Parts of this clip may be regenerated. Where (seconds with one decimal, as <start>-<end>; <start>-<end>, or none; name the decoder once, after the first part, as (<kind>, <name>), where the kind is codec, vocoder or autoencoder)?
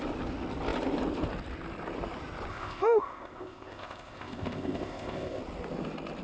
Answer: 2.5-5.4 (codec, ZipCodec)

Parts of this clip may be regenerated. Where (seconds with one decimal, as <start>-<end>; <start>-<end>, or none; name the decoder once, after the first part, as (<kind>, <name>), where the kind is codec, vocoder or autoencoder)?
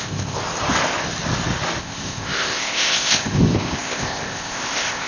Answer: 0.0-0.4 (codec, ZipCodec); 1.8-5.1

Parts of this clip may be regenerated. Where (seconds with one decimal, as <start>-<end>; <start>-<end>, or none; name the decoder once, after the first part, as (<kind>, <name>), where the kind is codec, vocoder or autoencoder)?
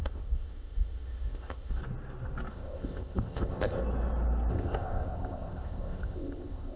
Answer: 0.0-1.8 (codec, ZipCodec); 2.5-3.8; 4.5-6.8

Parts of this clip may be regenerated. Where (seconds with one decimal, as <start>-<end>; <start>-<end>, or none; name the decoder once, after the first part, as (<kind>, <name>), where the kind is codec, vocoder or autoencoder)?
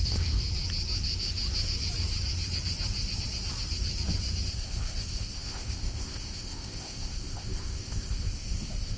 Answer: 0.0-0.4 (codec, ZipCodec); 4.5-9.0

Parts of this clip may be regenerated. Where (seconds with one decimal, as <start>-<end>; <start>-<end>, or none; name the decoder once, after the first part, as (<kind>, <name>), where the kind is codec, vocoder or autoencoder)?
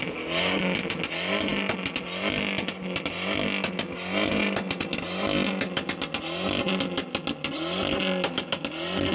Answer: none